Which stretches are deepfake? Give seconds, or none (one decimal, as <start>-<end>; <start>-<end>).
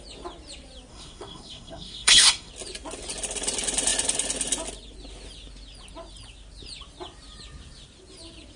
0.9-2.5